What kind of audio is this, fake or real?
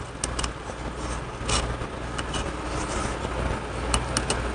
real